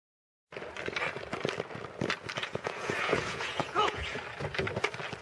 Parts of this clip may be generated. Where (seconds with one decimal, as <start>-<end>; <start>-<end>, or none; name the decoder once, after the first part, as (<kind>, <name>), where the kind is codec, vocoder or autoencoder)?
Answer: 2.4-4.2 (vocoder, Vocos)